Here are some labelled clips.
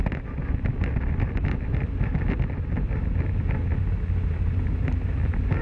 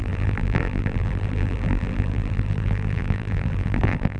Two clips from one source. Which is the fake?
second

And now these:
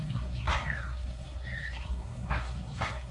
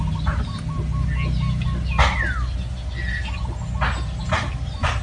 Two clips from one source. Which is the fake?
first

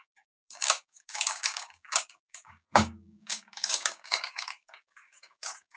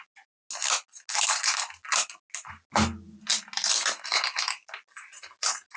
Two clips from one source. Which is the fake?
first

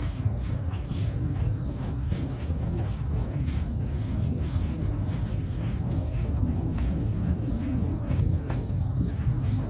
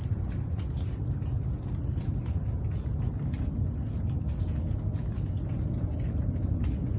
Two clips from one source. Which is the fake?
first